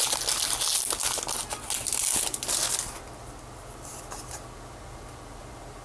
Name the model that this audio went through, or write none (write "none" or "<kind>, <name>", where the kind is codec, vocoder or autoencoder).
none